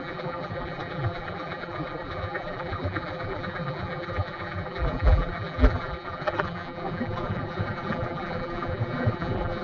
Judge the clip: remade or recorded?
remade